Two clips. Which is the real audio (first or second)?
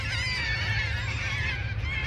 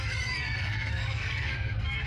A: first